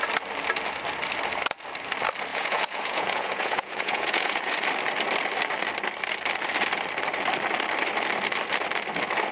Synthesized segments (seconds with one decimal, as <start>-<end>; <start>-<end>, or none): 2.3-4.5